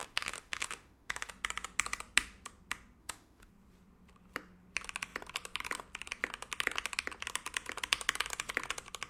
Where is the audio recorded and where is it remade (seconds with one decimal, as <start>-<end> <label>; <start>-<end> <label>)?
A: 0.0-1.3 remade; 1.3-3.0 recorded; 3.0-3.5 remade; 3.5-9.1 recorded